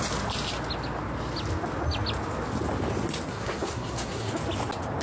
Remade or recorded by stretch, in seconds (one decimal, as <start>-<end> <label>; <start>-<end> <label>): 0.0-3.3 recorded; 3.3-4.3 remade; 4.3-5.0 recorded